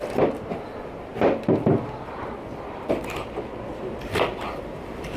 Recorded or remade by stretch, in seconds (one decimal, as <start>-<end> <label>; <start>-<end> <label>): 0.0-1.1 remade; 1.1-3.7 recorded; 3.7-5.2 remade